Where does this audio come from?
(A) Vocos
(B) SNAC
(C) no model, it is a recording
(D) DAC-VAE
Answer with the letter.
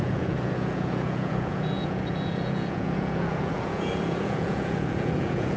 A